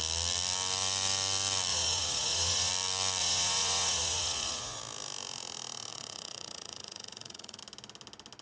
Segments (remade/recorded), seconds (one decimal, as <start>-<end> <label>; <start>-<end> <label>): 0.0-1.7 recorded; 1.7-2.7 remade; 2.7-3.2 recorded; 3.2-4.8 remade; 4.8-5.9 recorded; 5.9-7.6 remade; 7.6-8.4 recorded